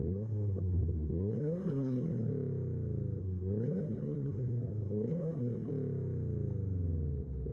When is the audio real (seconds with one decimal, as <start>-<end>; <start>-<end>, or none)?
2.3-3.2; 5.7-7.5